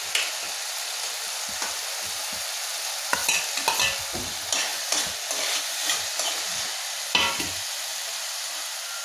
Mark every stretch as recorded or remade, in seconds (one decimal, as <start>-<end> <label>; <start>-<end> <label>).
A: 0.0-4.7 recorded; 4.7-5.6 remade; 5.6-7.9 recorded; 7.9-8.5 remade; 8.5-9.0 recorded